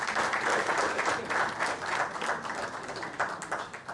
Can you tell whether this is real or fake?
real